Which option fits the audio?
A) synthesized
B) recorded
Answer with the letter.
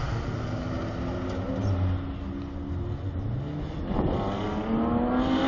B